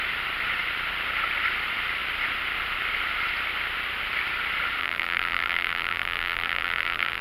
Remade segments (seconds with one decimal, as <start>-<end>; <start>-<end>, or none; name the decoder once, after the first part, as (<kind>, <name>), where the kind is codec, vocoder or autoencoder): 4.8-7.2 (vocoder, BigVGAN v2)